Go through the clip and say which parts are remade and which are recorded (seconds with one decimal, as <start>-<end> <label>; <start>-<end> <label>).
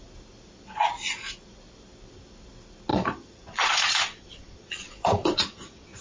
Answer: 0.0-2.9 recorded; 2.9-6.0 remade